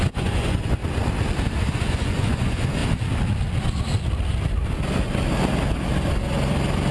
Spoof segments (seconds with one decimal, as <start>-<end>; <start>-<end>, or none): 0.0-0.8; 1.6-2.8